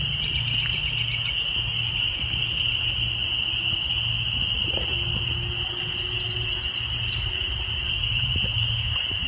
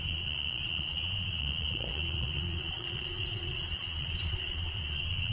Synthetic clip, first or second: second